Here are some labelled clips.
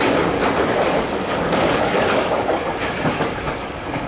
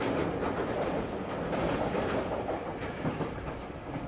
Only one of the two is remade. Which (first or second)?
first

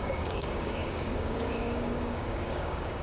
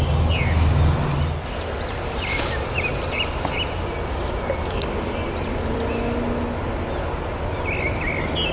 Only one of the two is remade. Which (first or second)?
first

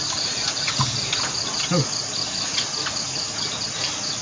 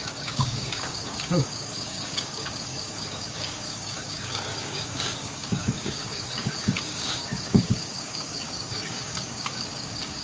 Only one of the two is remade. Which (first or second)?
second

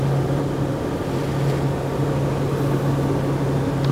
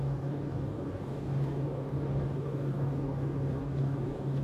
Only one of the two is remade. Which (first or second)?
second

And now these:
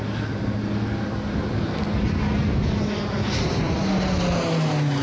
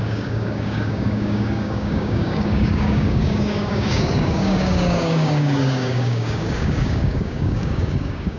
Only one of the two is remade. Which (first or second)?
second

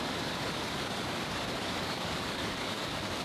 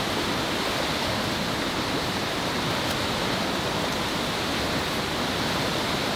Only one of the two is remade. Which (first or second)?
first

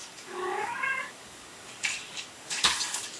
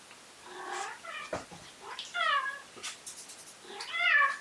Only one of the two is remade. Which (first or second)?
first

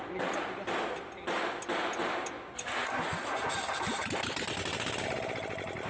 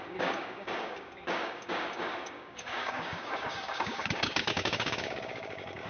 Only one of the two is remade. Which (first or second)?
second